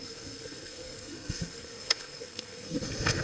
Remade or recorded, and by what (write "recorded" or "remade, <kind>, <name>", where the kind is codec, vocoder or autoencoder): remade, codec, SNAC